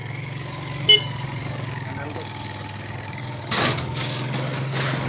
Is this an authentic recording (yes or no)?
no